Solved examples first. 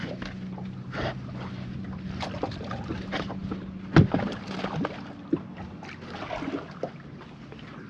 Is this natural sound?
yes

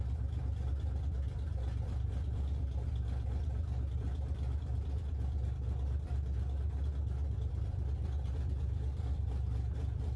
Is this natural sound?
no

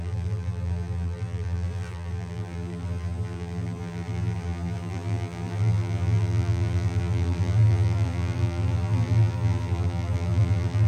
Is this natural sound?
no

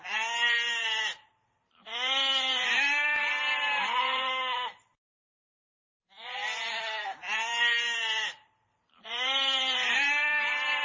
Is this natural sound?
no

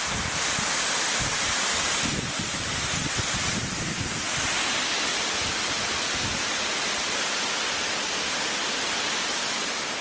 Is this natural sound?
yes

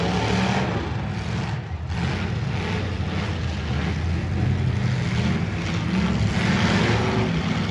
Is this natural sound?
yes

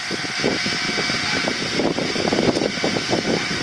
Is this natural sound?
no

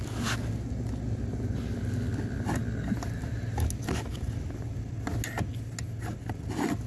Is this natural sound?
yes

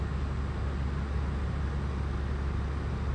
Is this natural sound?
yes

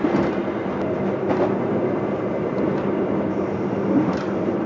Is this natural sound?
yes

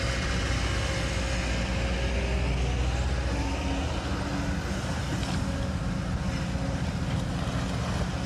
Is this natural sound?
yes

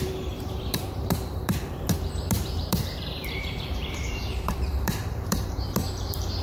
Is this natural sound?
no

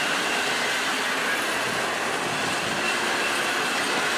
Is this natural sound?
yes